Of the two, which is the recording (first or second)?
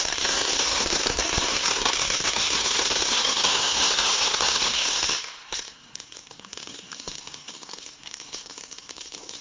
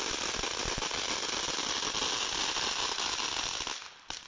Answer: second